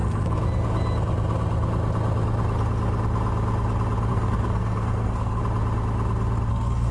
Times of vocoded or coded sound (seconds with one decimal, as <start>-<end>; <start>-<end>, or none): 4.1-5.4; 6.5-6.9